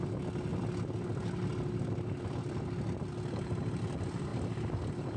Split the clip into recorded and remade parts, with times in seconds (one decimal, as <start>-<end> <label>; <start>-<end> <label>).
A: 0.0-5.2 recorded